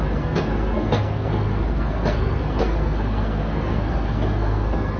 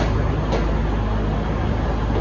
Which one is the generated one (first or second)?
first